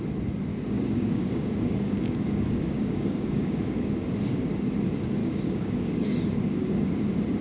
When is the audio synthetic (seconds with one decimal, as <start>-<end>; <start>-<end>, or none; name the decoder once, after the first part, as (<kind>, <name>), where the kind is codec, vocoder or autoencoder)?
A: 0.5-4.5 (codec, DAC); 5.2-6.9